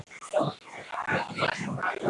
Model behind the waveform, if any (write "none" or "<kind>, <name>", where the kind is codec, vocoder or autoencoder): none